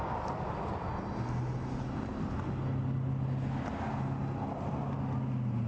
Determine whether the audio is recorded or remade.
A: recorded